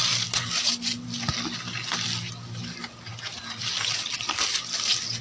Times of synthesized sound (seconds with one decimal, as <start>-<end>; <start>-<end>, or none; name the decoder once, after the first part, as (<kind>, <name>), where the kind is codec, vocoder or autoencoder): none